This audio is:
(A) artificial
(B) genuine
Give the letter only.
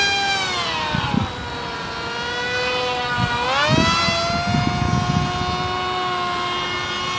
B